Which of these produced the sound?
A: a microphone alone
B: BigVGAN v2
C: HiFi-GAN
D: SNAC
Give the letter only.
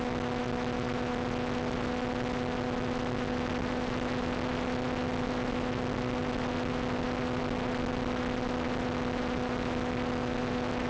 A